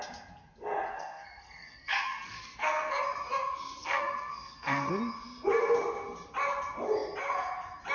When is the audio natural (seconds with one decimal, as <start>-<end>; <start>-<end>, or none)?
0.0-0.9; 3.0-3.8; 4.9-7.9

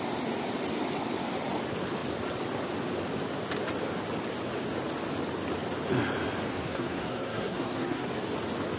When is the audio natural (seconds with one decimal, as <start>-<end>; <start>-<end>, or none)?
0.0-6.5; 8.1-8.8

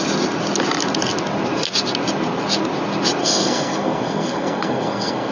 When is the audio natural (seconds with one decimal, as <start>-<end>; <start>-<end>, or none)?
0.0-3.2